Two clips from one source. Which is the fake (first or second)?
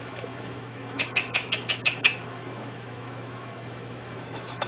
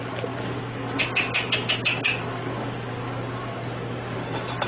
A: first